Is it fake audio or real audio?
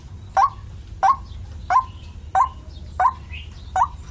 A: real